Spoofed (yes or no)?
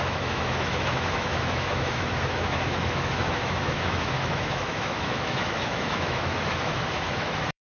yes